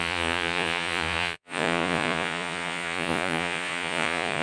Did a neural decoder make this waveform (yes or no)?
yes